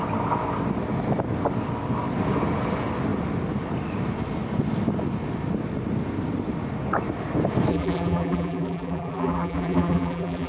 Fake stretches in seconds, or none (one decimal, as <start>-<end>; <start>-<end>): 7.7-10.5